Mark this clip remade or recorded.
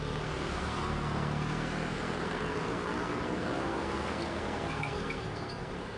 remade